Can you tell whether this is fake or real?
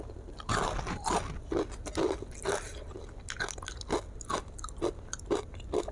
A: real